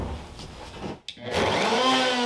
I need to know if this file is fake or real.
real